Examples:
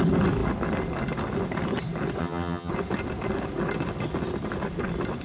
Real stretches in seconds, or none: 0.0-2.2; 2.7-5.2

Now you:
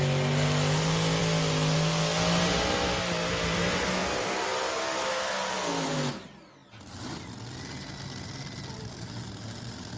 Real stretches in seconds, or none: 0.0-10.0